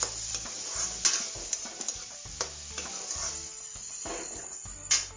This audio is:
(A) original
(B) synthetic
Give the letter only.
A